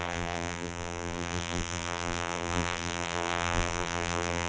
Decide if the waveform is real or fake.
fake